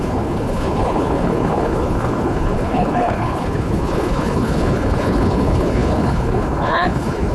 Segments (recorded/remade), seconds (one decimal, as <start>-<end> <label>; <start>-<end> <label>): 0.0-7.3 remade